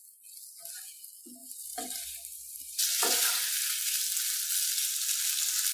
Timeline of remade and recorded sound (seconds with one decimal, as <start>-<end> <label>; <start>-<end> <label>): 0.0-1.4 recorded; 1.4-4.0 remade; 4.0-5.7 recorded